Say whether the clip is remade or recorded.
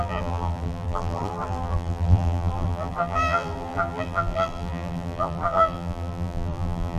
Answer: remade